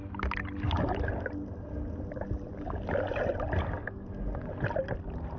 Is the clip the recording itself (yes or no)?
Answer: yes